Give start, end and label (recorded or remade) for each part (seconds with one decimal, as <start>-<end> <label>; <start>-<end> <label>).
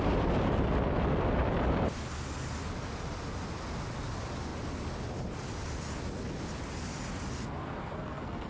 0.0-7.4 recorded; 7.4-8.5 remade